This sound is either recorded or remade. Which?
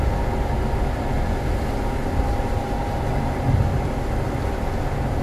recorded